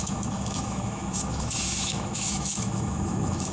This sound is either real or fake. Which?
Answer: fake